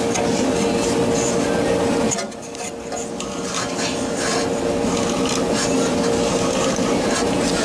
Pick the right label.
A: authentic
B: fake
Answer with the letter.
A